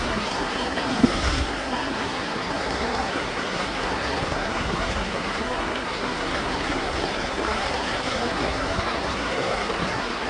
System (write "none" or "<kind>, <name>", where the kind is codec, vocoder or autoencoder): codec, SNAC